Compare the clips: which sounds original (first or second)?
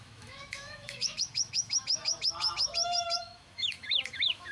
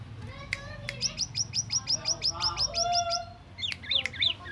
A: second